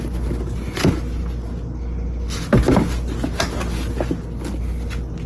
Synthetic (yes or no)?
no